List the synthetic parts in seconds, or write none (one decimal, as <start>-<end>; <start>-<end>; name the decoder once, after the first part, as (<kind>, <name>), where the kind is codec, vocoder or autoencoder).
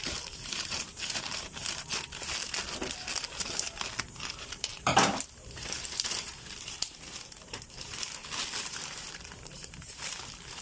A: 0.0-1.9 (vocoder, BigVGAN v2); 4.0-8.2; 8.7-10.6